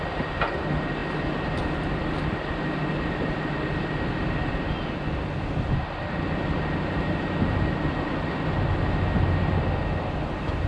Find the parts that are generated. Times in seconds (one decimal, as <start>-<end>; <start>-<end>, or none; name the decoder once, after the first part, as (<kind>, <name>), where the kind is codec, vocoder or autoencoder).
none